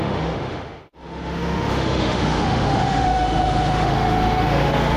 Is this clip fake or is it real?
fake